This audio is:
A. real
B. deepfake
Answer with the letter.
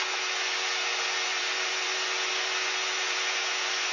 B